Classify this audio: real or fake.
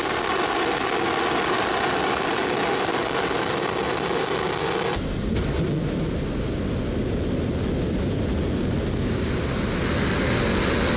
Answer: real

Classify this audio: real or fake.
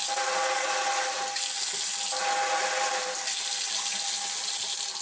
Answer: real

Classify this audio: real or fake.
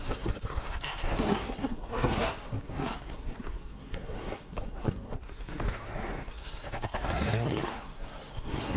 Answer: fake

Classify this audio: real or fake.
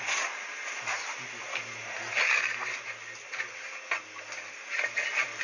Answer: real